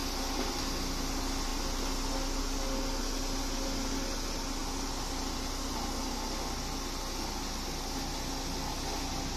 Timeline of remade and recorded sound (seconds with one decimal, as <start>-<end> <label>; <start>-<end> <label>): 0.0-0.6 remade; 0.6-9.4 recorded